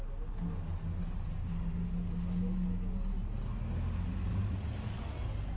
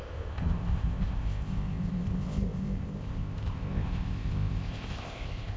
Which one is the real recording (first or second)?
first